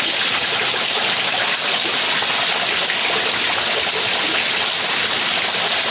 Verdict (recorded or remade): recorded